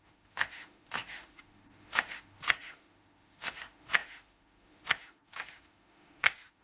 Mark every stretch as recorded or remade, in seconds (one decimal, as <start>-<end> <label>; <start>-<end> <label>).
0.0-6.6 remade